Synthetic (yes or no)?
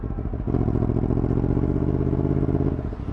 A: no